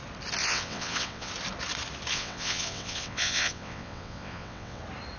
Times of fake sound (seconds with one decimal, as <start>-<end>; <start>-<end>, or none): 0.4-1.3; 2.1-4.8